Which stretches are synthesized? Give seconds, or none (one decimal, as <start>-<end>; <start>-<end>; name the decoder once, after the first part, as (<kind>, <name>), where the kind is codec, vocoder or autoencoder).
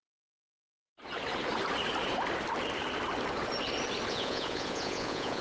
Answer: 0.0-0.9 (vocoder, Vocos); 4.1-5.4